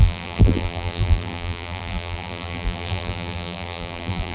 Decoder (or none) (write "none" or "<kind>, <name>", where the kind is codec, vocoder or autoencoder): vocoder, BigVGAN v2